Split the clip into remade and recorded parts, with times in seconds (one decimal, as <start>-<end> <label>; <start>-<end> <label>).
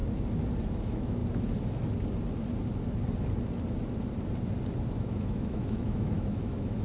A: 0.0-0.7 recorded; 0.7-1.2 remade; 1.2-5.0 recorded; 5.0-6.8 remade